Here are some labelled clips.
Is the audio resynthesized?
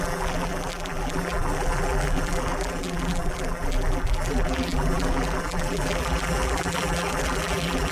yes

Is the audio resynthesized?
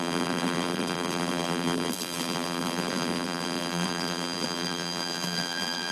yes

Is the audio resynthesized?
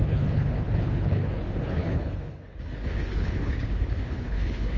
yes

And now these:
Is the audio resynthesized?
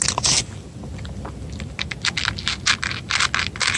no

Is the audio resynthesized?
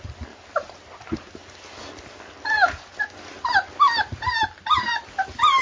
no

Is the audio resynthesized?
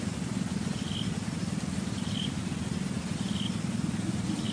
no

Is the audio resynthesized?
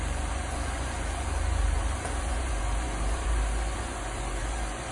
yes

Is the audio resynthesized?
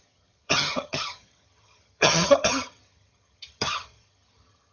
yes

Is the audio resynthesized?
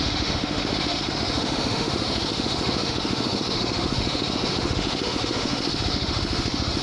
yes